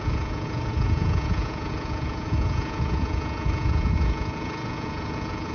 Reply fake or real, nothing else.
fake